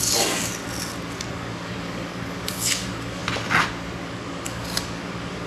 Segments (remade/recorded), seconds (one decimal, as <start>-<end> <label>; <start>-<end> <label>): 0.0-0.5 remade; 0.5-1.3 recorded; 1.3-3.2 remade; 3.2-4.0 recorded; 4.0-5.5 remade